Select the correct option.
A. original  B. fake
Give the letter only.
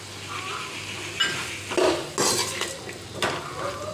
A